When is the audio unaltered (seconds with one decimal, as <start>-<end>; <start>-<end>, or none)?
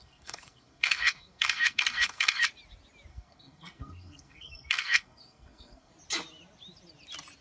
2.4-3.1; 5.9-7.4